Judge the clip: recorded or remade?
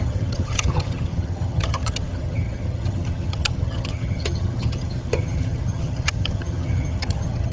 remade